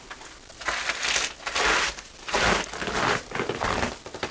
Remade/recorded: recorded